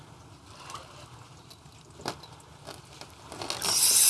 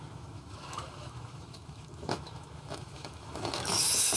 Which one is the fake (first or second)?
second